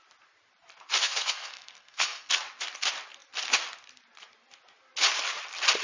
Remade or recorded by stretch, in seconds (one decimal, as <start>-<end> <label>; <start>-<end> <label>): 0.0-1.0 recorded; 1.0-2.3 remade; 2.3-5.8 recorded